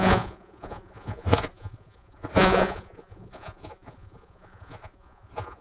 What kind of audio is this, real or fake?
fake